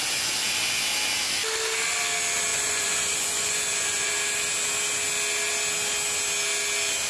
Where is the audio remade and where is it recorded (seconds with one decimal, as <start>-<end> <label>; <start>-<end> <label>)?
0.0-2.5 recorded; 2.5-4.1 remade; 4.1-7.1 recorded